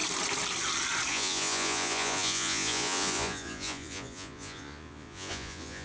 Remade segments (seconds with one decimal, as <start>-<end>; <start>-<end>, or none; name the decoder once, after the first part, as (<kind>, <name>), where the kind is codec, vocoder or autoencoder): 1.1-5.8 (vocoder, Vocos)